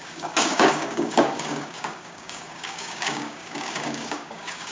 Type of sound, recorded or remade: remade